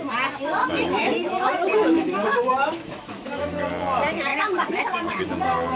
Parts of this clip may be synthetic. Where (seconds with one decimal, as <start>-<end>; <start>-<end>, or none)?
0.6-3.7; 4.3-5.2